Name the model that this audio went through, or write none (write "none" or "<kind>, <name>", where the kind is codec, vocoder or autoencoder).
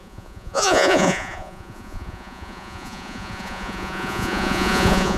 vocoder, Vocos